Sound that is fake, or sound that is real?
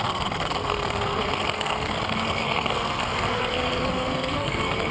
fake